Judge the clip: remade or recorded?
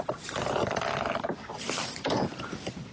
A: recorded